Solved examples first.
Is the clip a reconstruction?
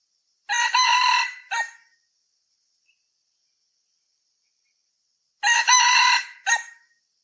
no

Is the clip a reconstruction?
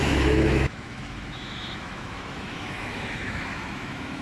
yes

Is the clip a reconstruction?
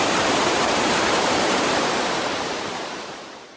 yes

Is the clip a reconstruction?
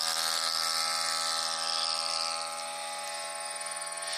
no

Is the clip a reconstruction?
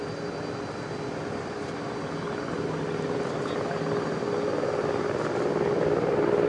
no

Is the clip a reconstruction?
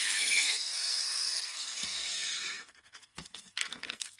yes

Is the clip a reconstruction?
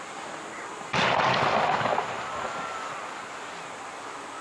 no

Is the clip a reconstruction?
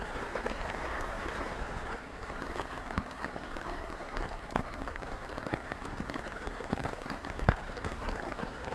yes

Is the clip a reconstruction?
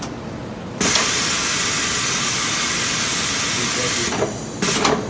no